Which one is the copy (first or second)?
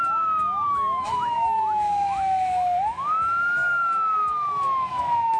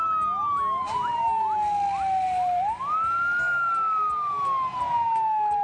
first